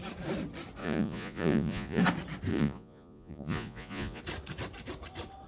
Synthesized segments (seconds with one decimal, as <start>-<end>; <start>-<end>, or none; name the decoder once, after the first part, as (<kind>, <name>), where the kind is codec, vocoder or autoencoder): 0.8-2.0 (vocoder, Vocos); 2.5-4.2